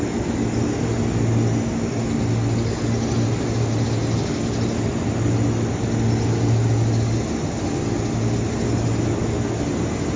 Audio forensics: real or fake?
real